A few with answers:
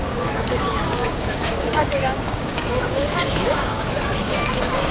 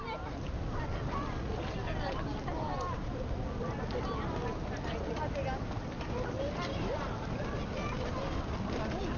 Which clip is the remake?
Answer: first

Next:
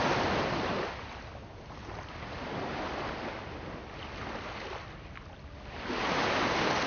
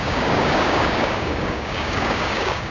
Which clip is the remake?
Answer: second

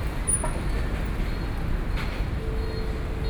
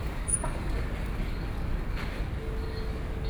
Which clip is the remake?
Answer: second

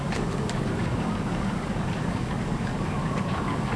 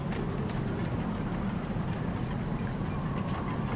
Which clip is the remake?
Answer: first